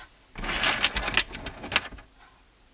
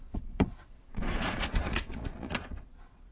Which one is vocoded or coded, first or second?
second